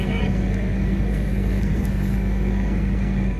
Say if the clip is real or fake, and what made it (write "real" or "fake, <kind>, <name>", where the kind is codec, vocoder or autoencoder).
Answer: fake, codec, SNAC